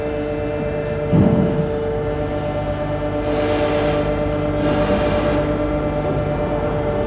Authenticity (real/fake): real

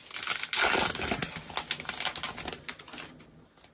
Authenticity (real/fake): real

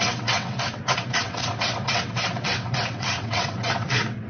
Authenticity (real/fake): fake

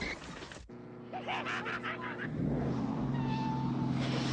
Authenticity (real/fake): real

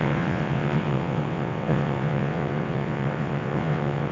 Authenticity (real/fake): fake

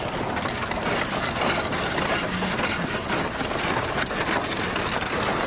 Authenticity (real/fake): real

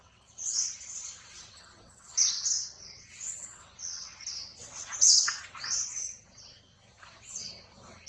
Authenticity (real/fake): fake